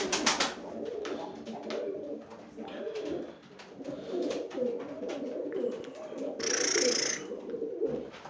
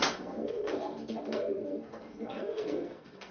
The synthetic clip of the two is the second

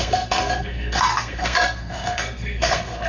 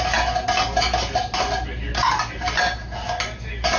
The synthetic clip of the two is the first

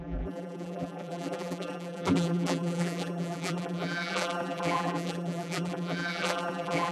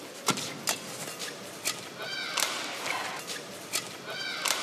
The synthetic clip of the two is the first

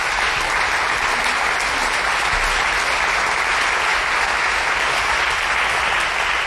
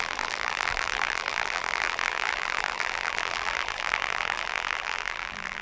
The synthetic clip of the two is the second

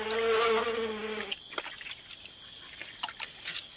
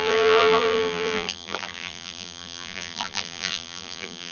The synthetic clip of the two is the second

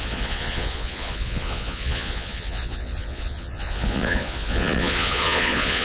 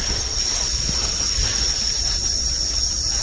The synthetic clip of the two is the first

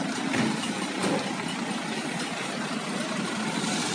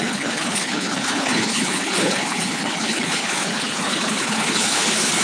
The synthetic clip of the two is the second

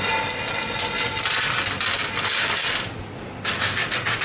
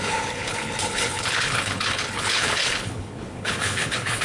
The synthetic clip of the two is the second